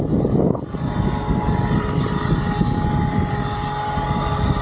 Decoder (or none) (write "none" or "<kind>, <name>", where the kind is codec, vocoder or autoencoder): none